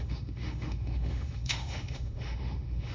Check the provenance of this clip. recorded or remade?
remade